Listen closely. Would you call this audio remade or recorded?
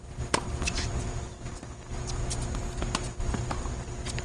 recorded